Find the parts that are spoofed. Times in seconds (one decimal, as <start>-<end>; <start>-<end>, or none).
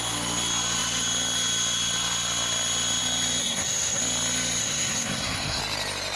3.4-4.0; 4.6-5.6